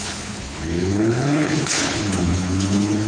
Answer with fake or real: fake